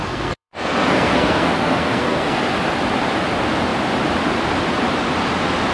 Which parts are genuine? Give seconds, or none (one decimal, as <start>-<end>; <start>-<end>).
2.4-5.7